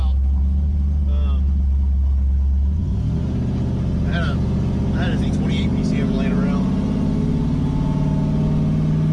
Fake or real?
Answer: real